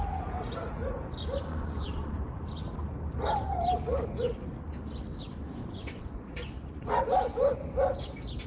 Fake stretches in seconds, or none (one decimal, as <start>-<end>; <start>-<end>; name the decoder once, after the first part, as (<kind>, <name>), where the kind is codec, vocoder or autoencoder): 1.5-2.2 (vocoder, Vocos); 5.6-7.0